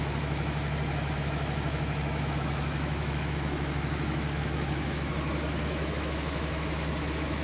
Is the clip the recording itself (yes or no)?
no